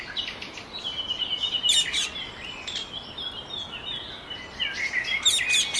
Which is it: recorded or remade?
recorded